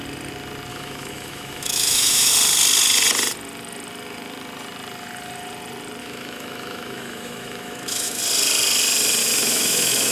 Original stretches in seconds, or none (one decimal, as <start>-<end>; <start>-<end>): 0.0-0.7; 2.3-6.0; 8.2-9.2